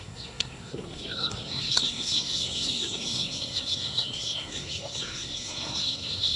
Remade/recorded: remade